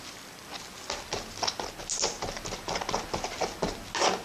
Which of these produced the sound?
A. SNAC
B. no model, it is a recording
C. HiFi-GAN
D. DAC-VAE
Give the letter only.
B